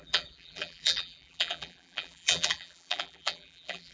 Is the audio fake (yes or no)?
yes